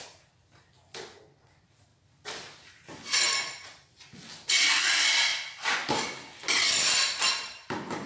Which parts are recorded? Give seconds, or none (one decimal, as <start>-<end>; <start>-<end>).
0.0-8.1